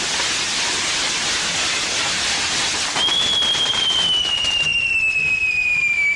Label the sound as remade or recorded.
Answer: recorded